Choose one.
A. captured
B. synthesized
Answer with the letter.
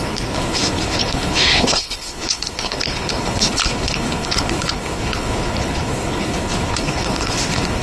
B